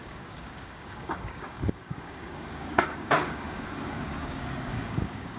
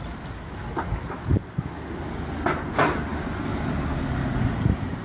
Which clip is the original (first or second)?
second